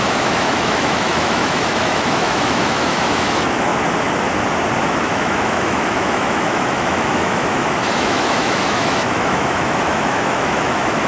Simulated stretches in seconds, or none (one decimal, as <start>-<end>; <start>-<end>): 0.0-3.7; 4.8-11.1